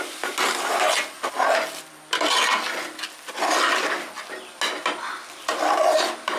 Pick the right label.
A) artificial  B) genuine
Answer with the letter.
B